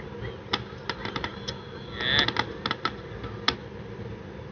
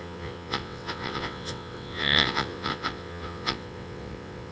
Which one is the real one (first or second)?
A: first